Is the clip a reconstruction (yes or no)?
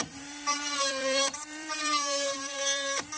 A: yes